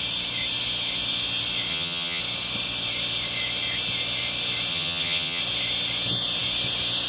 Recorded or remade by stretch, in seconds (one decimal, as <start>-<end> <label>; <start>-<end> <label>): 0.0-1.7 recorded; 1.7-2.2 remade; 2.2-4.7 recorded; 4.7-5.4 remade; 5.4-7.1 recorded